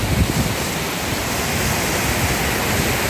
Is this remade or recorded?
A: recorded